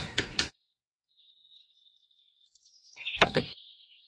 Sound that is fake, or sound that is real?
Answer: fake